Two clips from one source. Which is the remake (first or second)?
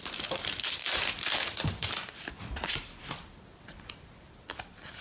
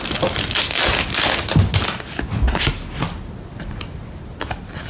first